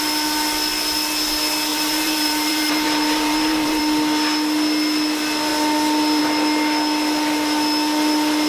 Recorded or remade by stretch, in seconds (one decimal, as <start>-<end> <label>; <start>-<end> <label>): 0.0-1.7 recorded; 1.7-3.8 remade; 3.8-8.5 recorded